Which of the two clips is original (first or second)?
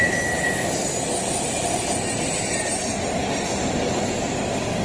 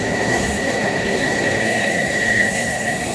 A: first